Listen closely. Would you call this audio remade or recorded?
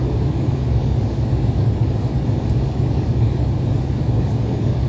remade